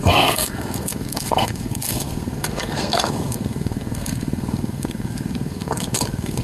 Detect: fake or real fake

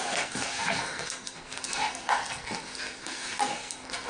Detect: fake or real fake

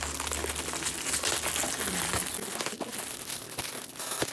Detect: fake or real real